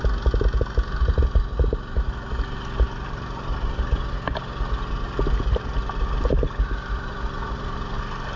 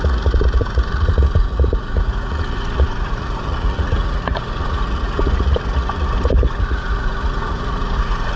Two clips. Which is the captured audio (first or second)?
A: first